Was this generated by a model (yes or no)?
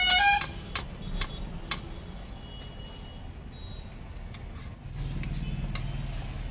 no